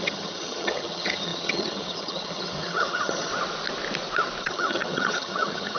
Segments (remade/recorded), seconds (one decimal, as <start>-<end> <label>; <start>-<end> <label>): 0.0-3.3 remade; 3.3-4.4 recorded; 4.4-5.8 remade

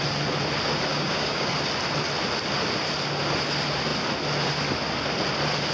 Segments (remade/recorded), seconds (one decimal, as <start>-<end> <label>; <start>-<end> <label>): 0.0-0.9 recorded; 0.9-1.5 remade; 1.5-5.7 recorded

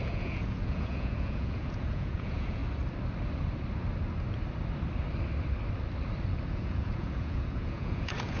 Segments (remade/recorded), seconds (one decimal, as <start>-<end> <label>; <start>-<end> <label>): 0.0-2.6 remade; 2.6-6.5 recorded; 6.5-8.4 remade

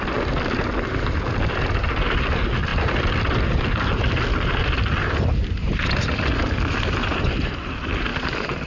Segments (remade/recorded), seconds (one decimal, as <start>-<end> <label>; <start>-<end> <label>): 0.0-8.7 recorded

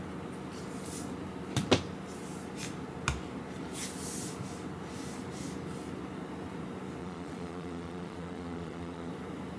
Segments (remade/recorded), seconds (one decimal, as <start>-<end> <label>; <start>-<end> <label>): 0.0-7.0 recorded; 7.0-9.1 remade; 9.1-9.6 recorded

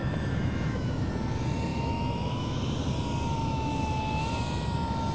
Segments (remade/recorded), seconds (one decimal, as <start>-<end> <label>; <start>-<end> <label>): 0.0-1.1 remade; 1.1-1.7 recorded; 1.7-2.6 remade; 2.6-3.4 recorded; 3.4-3.9 remade; 3.9-5.1 recorded